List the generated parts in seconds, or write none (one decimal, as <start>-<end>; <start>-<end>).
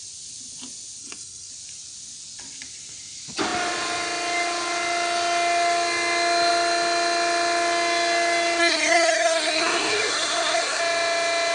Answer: 1.0-1.5; 8.6-10.8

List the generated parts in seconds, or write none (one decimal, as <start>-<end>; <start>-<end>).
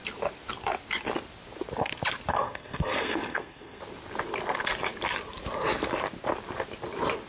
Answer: 2.3-3.8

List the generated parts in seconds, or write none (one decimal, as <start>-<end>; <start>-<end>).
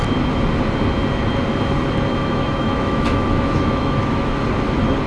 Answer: 2.1-4.3